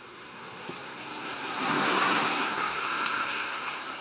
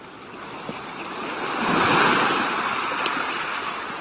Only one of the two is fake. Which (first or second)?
first